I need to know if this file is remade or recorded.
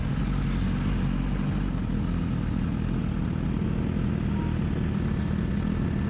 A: recorded